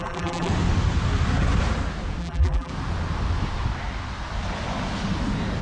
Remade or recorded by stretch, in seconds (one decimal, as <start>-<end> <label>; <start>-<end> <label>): 0.0-0.5 remade; 0.5-2.2 recorded; 2.2-2.7 remade; 2.7-5.6 recorded